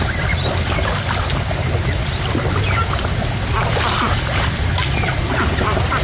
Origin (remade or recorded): recorded